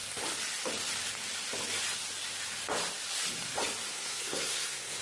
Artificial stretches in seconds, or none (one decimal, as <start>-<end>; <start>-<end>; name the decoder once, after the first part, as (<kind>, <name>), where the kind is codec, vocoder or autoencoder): 3.8-5.0 (codec, SNAC)